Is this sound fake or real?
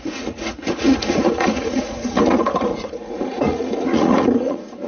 fake